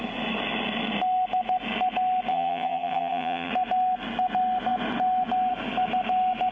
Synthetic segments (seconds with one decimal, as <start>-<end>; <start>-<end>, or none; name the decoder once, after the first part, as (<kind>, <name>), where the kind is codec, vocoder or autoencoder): 2.3-3.5 (vocoder, HiFi-GAN)